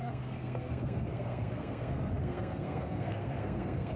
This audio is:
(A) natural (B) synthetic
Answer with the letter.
B